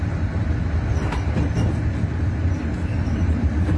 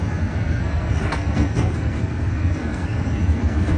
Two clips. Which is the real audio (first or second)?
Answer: first